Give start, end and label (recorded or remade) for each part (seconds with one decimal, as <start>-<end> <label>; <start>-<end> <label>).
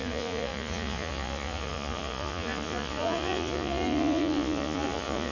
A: 0.0-5.3 remade